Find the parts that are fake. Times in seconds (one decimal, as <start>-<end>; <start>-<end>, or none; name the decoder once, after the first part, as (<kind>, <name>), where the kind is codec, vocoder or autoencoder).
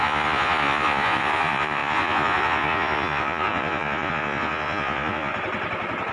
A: 0.0-5.3 (vocoder, Vocos)